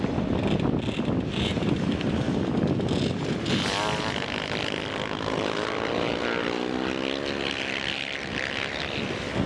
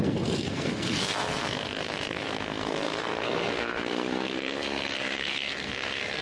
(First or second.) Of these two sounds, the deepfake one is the second